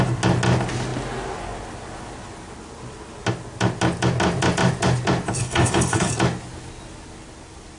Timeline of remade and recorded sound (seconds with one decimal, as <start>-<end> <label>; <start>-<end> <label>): 0.0-5.4 recorded; 5.4-6.1 remade; 6.1-7.8 recorded